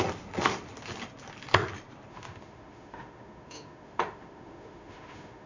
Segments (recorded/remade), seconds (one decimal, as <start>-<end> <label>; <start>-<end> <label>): 0.0-2.1 recorded; 2.1-5.5 remade